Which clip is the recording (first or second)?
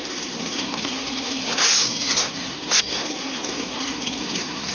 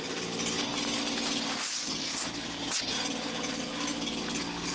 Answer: second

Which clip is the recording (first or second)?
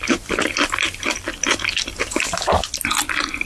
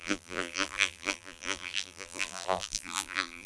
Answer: first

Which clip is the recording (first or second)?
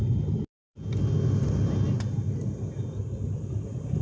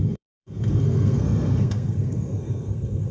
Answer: first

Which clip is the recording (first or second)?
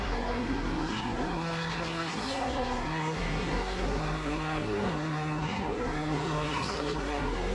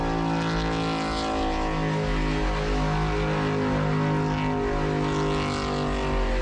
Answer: second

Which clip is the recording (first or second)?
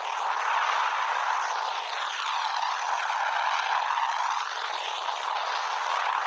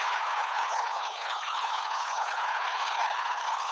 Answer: first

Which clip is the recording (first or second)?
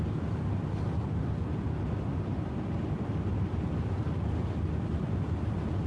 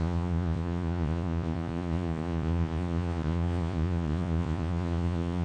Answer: first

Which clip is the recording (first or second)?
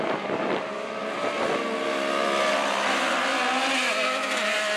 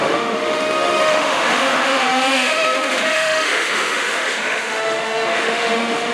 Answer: first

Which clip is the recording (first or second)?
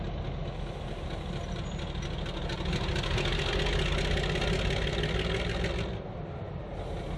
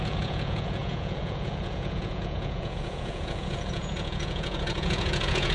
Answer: first